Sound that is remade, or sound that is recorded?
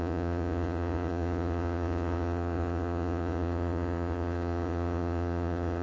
remade